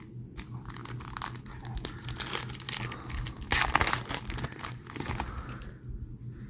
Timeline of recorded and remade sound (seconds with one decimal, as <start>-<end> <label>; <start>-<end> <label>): 0.0-6.5 recorded